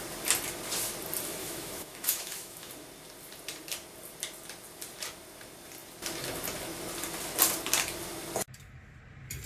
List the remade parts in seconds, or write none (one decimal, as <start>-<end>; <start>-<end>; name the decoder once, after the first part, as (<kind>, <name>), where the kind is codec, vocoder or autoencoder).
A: 1.4-2.7 (autoencoder, DAC-VAE)